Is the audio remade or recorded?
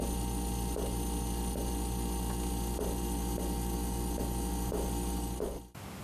recorded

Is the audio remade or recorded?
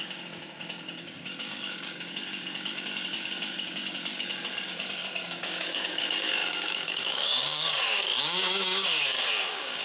remade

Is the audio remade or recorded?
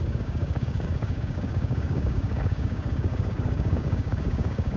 remade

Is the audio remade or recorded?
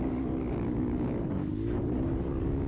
remade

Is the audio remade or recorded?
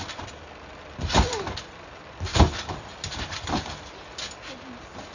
recorded